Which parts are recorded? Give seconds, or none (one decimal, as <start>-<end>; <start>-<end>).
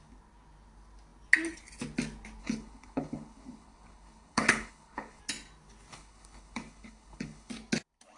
0.0-2.4; 5.2-5.9; 7.5-8.2